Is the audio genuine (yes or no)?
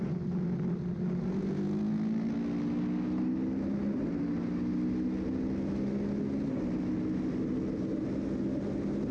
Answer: yes